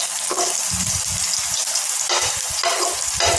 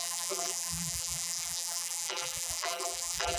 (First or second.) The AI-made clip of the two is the second